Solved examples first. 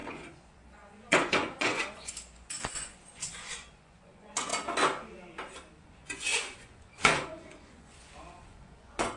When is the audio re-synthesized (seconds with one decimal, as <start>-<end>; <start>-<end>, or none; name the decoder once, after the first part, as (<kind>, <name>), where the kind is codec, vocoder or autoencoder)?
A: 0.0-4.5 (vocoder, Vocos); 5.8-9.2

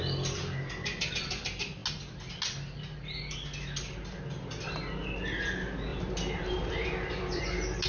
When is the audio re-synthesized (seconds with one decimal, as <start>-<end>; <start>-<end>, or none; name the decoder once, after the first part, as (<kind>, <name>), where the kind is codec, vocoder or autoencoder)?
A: 5.9-7.4 (vocoder, BigVGAN v2)

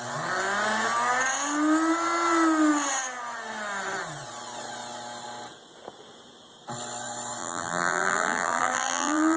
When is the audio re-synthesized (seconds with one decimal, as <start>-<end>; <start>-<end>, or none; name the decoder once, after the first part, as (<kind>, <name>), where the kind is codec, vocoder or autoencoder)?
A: 7.4-9.4 (vocoder, BigVGAN v2)

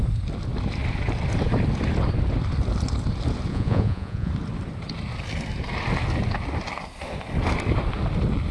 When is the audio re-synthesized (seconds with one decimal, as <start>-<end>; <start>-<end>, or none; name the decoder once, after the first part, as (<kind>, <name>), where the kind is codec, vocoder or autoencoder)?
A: 3.5-4.3 (vocoder, Vocos)

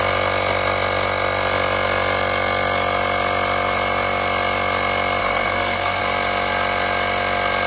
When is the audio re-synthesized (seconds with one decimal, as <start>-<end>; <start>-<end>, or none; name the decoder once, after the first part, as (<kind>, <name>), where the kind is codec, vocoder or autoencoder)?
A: 5.2-6.0 (codec, SNAC)

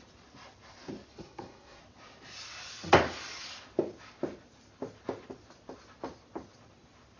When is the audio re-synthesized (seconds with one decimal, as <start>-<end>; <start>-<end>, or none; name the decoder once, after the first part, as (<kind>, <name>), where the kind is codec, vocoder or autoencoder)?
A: 1.2-1.8 (codec, SNAC)

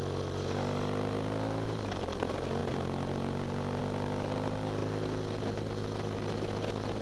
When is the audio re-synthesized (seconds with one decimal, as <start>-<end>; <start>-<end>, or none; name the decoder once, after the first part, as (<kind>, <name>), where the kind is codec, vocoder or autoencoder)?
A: none

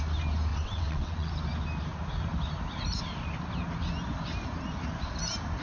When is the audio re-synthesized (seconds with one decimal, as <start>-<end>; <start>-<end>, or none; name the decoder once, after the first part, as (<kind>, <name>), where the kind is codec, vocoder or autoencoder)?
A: 0.5-1.3 (vocoder, WaveNeXt)